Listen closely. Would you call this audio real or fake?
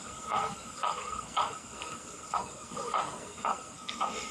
fake